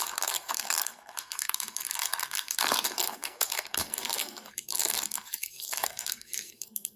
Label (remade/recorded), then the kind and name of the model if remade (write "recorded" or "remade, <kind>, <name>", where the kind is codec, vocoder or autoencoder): remade, codec, SNAC